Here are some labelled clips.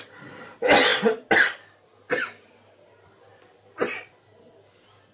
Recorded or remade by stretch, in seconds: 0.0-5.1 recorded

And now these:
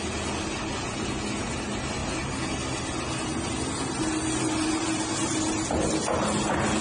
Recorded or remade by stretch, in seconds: 0.0-6.8 recorded

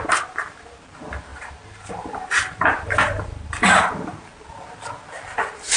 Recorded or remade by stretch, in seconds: 0.0-1.3 recorded; 1.3-3.8 remade; 3.8-5.8 recorded

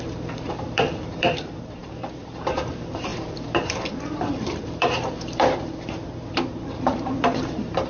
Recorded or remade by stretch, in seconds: 0.0-7.9 remade

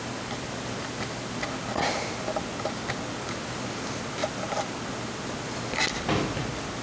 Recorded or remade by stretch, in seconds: 0.0-6.8 recorded

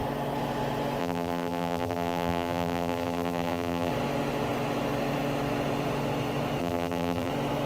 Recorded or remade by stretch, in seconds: 0.0-1.0 recorded; 1.0-3.9 remade; 3.9-6.6 recorded; 6.6-7.3 remade; 7.3-7.7 recorded